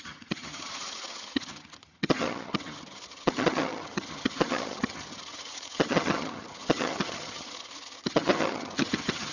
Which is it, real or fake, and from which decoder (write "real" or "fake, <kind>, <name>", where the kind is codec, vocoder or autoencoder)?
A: fake, vocoder, HiFi-GAN